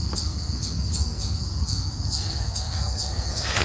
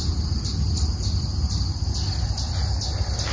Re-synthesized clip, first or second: first